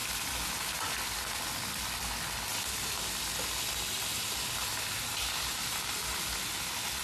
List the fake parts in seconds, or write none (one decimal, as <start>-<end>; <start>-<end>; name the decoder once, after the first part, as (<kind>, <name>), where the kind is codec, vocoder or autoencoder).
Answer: none